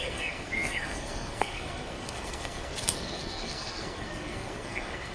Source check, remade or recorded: remade